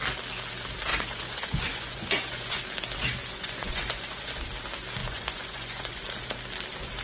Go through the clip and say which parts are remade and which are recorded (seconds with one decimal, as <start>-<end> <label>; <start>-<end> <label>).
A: 0.0-0.9 recorded; 0.9-2.6 remade; 2.6-3.3 recorded; 3.3-4.4 remade; 4.4-5.0 recorded; 5.0-6.0 remade; 6.0-7.0 recorded